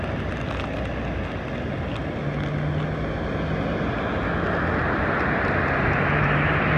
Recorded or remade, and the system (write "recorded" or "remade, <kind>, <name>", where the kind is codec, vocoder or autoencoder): recorded